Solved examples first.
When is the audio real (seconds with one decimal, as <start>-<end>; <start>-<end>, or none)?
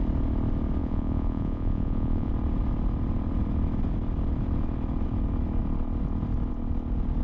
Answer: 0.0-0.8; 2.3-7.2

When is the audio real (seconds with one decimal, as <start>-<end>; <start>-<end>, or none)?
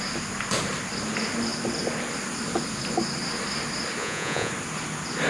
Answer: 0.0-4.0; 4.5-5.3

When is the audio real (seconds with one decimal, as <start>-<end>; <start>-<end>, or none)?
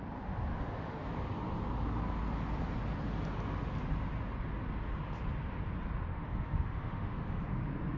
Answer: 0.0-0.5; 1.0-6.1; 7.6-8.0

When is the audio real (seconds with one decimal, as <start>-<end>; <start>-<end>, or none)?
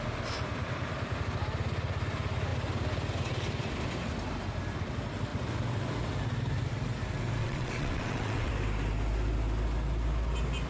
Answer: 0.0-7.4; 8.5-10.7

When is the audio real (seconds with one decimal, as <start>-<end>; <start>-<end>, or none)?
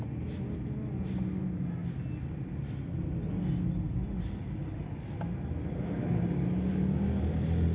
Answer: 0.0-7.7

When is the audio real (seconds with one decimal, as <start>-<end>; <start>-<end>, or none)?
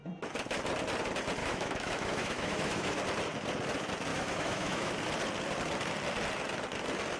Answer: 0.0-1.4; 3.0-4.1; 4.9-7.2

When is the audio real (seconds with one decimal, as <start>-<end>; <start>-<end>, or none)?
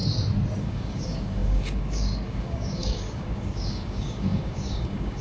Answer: 0.0-0.6